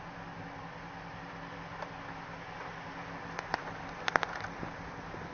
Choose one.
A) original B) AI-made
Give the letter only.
A